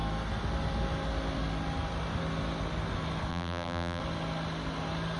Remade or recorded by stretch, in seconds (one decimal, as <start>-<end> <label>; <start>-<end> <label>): 0.0-3.3 recorded; 3.3-4.0 remade; 4.0-5.2 recorded